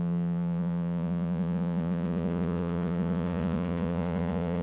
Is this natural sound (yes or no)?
no